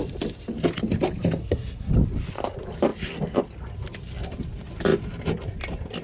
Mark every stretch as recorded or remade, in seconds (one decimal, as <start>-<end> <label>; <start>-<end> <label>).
0.0-1.4 recorded; 1.4-1.9 remade; 1.9-6.0 recorded